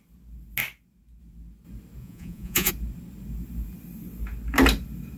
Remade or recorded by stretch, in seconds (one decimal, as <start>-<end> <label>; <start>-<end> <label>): 0.0-2.0 recorded; 2.0-2.7 remade; 2.7-5.2 recorded